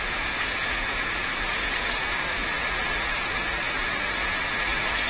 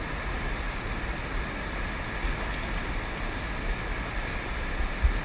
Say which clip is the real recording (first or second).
second